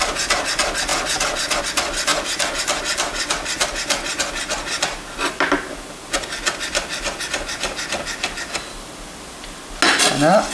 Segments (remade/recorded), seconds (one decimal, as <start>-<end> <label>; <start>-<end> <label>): 0.0-10.5 recorded